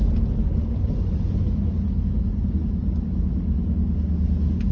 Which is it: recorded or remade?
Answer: recorded